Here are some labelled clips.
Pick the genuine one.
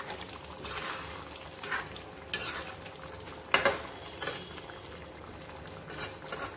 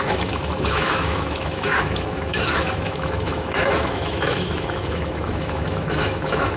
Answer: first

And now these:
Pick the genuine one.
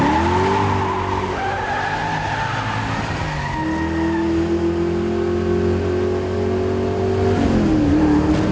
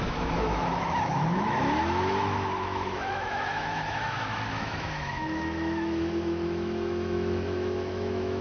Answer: first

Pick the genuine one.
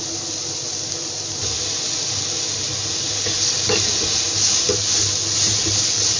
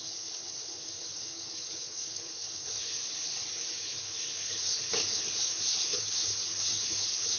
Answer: first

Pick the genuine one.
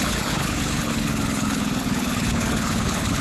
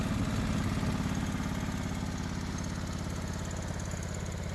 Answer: second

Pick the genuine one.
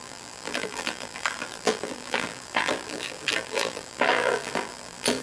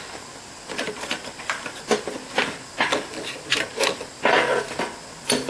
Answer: second